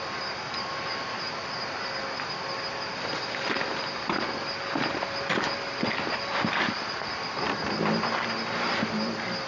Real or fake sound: fake